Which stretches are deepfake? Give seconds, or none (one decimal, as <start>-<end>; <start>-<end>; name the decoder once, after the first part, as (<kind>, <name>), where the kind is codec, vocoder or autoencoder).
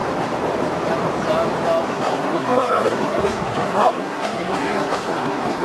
1.9-5.6 (codec, SNAC)